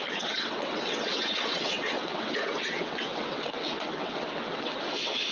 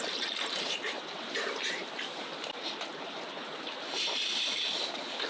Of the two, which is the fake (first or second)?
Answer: first